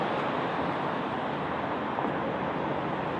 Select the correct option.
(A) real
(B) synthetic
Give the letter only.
A